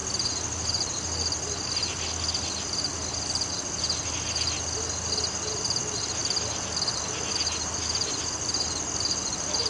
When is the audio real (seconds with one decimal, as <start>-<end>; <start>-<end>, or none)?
0.0-9.7